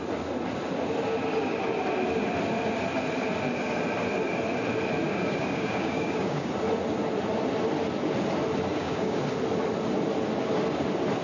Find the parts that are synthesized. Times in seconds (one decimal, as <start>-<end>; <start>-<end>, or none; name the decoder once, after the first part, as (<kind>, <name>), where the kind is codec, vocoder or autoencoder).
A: 5.1-6.5 (codec, DAC); 8.7-9.2